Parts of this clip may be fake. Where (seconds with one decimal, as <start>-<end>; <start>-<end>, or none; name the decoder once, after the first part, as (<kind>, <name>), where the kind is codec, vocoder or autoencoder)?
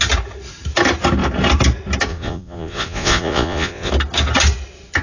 2.1-3.9 (vocoder, Vocos)